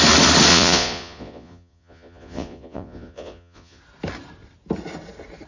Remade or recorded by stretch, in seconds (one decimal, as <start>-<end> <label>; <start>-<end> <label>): 0.0-0.5 recorded; 0.5-3.8 remade; 3.8-5.5 recorded